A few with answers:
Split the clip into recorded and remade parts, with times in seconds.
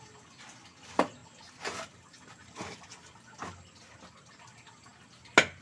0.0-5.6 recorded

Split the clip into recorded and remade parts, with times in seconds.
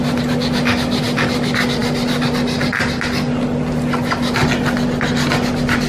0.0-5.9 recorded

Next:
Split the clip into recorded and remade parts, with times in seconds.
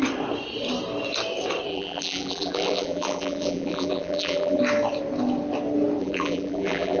0.0-1.7 recorded; 1.7-4.6 remade; 4.6-6.0 recorded; 6.0-7.0 remade